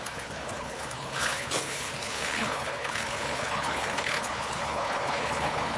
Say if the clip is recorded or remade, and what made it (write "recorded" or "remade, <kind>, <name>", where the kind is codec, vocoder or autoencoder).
remade, codec, HILCodec